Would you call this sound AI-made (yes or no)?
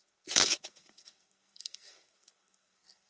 yes